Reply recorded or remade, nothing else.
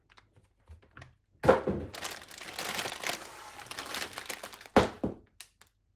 recorded